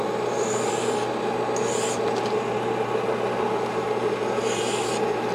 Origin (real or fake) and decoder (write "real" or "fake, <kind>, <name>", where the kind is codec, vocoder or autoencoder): real